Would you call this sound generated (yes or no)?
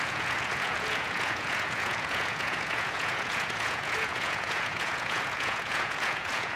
yes